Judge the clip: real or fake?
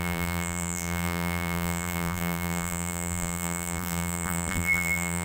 fake